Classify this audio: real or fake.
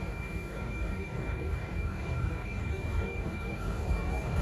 fake